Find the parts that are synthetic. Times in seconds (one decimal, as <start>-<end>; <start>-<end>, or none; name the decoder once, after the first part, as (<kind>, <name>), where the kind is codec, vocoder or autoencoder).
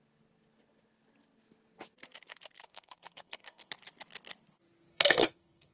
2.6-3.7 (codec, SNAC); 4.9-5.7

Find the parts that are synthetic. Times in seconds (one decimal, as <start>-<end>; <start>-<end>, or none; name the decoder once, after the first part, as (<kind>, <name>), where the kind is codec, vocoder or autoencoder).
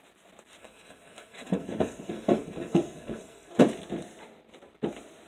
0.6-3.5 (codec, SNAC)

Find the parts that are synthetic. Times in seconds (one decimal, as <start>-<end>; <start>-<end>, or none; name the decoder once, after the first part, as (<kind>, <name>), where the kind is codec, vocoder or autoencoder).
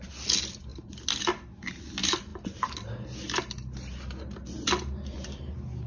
none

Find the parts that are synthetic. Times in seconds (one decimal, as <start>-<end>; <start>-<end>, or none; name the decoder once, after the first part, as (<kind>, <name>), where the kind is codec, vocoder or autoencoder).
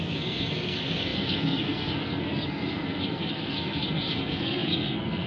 0.0-5.3 (codec, SNAC)